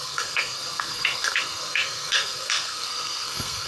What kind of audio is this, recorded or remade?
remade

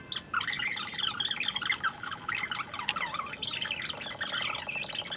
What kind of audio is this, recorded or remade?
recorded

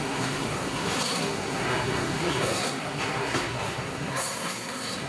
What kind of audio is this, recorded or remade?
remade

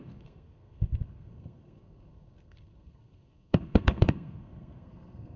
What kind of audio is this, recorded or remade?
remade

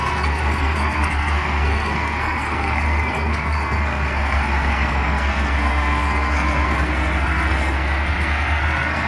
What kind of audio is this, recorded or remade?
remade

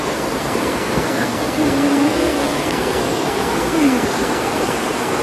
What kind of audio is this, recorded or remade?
remade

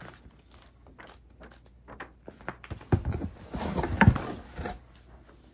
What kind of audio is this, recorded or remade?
recorded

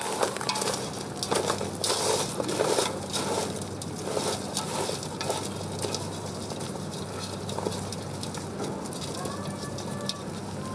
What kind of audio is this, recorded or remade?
recorded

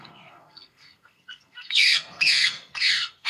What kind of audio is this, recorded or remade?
remade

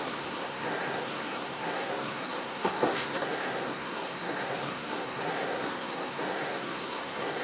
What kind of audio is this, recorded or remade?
remade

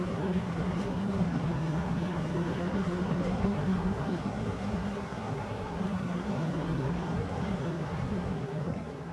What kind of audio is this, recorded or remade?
remade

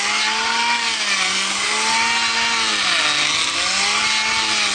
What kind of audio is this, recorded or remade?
recorded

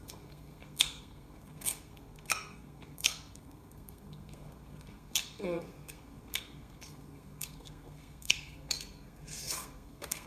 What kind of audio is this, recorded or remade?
remade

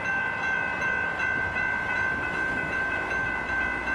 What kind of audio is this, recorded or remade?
recorded